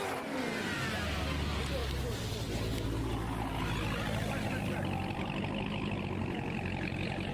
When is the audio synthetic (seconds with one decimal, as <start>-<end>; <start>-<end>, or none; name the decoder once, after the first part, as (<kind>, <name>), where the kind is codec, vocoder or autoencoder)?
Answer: none